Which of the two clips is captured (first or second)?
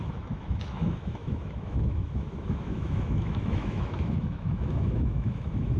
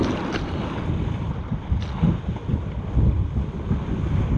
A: second